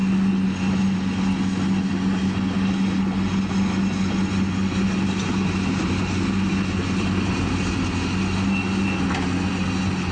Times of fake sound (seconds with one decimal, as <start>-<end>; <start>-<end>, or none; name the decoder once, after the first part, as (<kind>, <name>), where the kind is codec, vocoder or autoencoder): none